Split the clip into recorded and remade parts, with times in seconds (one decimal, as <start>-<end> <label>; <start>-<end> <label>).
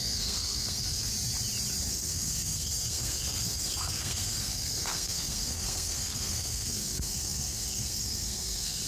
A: 0.0-1.1 remade; 1.1-1.9 recorded; 1.9-8.9 remade